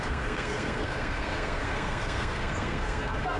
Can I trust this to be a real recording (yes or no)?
no